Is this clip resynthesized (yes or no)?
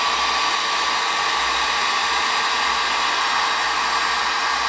no